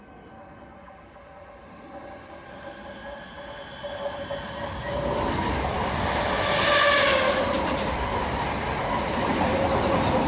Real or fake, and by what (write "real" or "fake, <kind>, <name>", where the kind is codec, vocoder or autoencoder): real